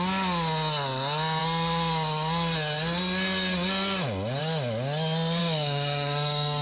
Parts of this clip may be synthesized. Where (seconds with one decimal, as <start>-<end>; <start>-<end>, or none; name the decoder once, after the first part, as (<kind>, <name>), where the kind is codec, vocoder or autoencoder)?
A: 5.4-6.6 (codec, DAC)